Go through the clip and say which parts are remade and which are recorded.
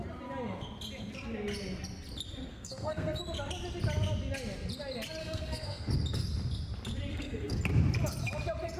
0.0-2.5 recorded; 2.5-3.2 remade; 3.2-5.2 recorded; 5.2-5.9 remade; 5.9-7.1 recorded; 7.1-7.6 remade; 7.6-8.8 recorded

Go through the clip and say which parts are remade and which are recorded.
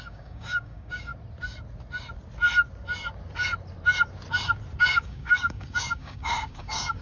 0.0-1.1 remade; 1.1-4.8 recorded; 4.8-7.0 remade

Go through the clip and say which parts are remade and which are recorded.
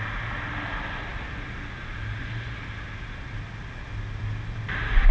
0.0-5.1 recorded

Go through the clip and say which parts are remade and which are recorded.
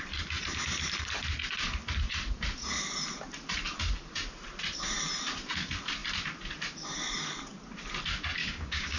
0.0-8.4 recorded; 8.4-9.0 remade